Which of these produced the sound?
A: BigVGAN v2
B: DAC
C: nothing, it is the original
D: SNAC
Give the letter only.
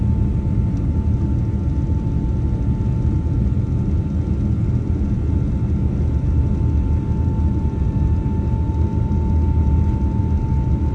C